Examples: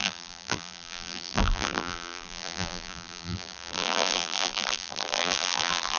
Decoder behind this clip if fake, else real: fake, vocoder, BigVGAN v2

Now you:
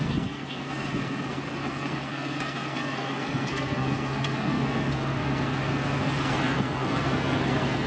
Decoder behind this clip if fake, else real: fake, codec, SNAC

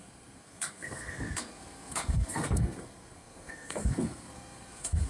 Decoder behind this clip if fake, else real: fake, codec, SNAC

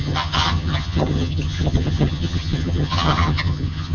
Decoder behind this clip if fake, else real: fake, vocoder, HiFi-GAN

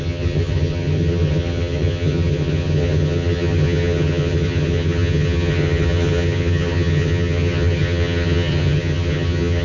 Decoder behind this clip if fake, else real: fake, vocoder, HiFi-GAN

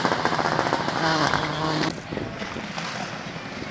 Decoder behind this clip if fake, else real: real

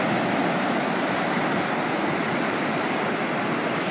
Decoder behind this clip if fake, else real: real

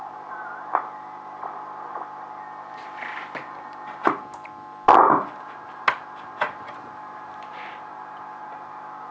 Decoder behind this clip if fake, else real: real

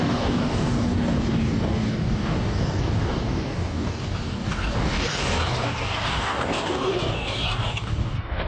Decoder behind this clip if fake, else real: fake, codec, DAC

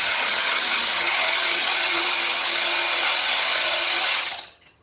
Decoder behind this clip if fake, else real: fake, vocoder, HiFi-GAN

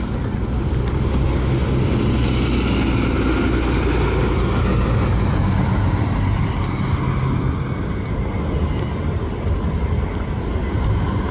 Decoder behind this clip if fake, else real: real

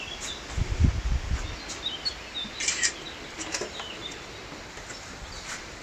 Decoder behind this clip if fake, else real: real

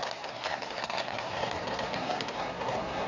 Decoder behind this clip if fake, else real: fake, codec, SNAC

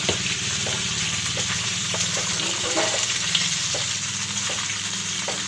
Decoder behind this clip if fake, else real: fake, vocoder, BigVGAN v2